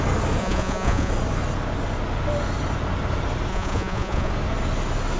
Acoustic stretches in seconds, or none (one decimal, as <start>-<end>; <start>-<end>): 0.0-0.4; 1.1-3.5; 4.3-5.2